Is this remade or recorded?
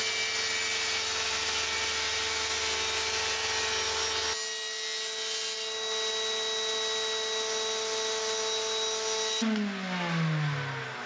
recorded